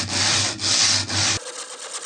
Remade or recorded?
recorded